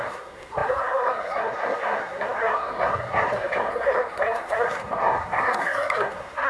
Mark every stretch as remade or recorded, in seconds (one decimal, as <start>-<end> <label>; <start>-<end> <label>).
0.0-6.5 remade